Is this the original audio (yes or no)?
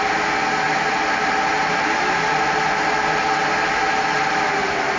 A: yes